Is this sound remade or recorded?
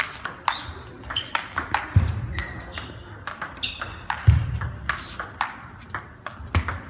recorded